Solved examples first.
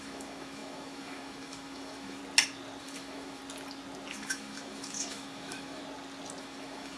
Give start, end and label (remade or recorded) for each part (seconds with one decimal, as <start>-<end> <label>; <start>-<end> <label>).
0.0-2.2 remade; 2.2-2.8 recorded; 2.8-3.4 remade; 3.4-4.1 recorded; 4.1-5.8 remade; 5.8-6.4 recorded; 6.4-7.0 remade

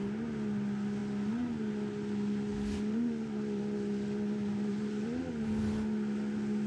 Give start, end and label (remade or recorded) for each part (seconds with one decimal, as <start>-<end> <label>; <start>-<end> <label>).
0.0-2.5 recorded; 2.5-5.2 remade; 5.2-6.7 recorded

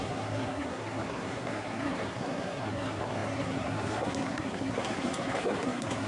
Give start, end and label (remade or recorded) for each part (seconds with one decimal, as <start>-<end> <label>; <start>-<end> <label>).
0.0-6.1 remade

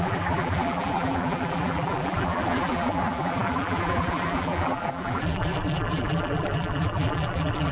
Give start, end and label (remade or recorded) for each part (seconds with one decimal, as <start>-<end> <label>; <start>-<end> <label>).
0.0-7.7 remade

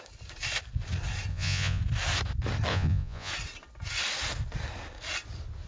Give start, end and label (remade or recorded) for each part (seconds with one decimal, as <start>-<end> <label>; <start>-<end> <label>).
0.0-1.3 recorded; 1.3-1.8 remade; 1.8-2.7 recorded; 2.7-3.3 remade; 3.3-5.7 recorded

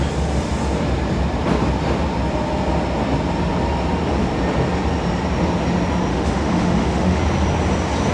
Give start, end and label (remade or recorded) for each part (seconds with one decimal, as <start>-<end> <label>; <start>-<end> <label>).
0.0-6.1 recorded; 6.1-7.2 remade; 7.2-8.1 recorded

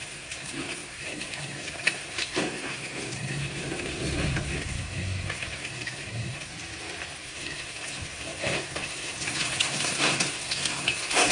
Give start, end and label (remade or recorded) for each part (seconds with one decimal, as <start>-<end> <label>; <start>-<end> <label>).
0.0-6.5 remade; 6.5-7.2 recorded; 7.2-11.3 remade